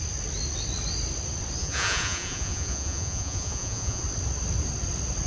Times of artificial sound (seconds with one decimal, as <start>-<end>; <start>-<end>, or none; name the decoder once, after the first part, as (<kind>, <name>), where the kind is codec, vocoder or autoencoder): 1.6-4.0 (vocoder, Vocos)